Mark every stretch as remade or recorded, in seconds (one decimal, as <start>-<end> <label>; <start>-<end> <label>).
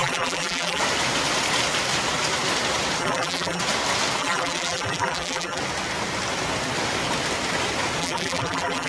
0.0-0.8 remade; 0.8-3.0 recorded; 3.0-3.6 remade; 3.6-4.2 recorded; 4.2-5.6 remade; 5.6-8.0 recorded; 8.0-8.9 remade